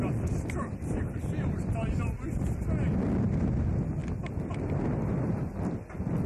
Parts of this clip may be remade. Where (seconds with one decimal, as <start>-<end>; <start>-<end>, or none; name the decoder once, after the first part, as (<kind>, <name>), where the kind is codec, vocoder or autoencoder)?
0.8-1.7 (vocoder, BigVGAN v2)